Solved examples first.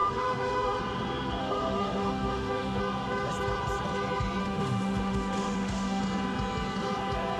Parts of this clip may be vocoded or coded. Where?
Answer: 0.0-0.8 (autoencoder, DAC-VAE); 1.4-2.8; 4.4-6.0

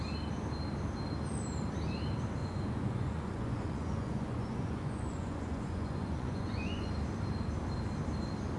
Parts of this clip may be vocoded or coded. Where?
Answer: 2.4-6.9 (vocoder, Vocos)

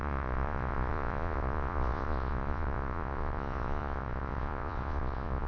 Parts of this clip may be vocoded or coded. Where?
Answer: 0.0-5.5 (vocoder, Vocos)

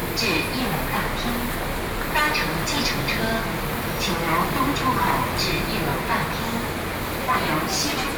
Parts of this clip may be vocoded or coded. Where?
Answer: none

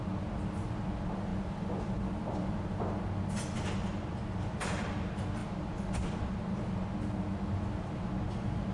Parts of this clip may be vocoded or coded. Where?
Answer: none

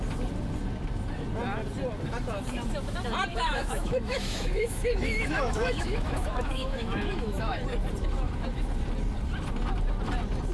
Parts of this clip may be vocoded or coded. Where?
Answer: 3.3-7.6 (autoencoder, DAC-VAE)

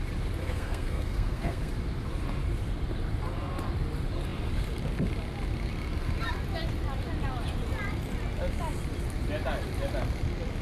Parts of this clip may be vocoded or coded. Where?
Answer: 0.4-1.7 (codec, SNAC)

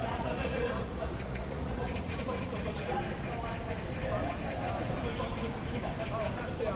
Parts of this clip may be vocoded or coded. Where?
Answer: 0.0-3.0 (vocoder, Vocos)